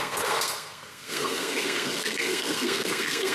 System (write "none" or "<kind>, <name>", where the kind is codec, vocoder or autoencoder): codec, SNAC